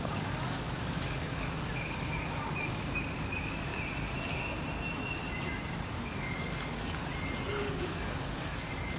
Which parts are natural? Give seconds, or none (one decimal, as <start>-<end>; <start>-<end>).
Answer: 3.7-5.9; 7.0-7.6